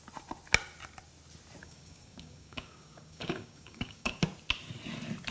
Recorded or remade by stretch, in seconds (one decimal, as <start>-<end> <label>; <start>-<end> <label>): 0.0-1.6 recorded; 1.6-4.2 remade; 4.2-5.3 recorded